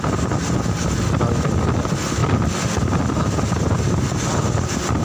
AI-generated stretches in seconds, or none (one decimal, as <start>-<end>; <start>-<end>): none